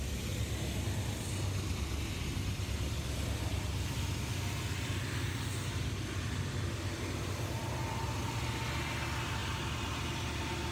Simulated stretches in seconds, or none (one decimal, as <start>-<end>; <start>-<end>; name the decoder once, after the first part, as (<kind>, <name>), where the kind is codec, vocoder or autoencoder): none